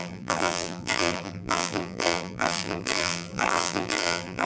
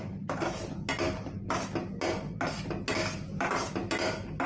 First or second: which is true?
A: second